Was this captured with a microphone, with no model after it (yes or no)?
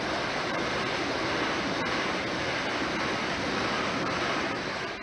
yes